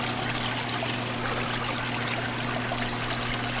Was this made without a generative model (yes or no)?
yes